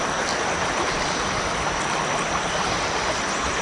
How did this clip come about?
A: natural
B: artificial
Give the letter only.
A